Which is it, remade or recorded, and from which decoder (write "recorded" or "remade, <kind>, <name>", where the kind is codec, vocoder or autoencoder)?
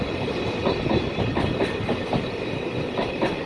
recorded